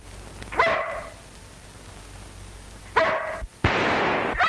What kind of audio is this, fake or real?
real